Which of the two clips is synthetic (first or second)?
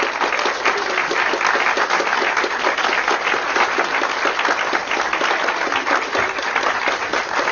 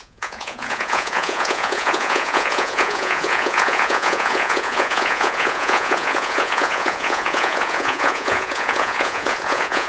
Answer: second